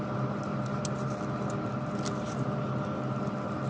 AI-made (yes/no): no